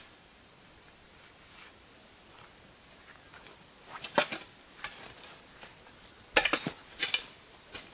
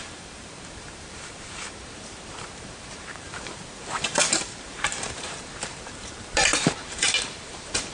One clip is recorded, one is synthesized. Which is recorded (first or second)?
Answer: first